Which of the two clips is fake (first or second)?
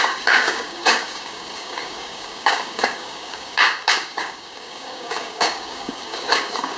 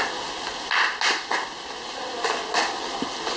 first